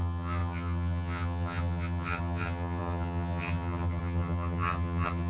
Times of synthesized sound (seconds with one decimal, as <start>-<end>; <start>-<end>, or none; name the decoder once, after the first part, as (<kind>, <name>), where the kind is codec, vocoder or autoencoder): 0.0-5.3 (vocoder, HiFi-GAN)